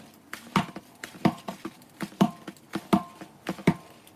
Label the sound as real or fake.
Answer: real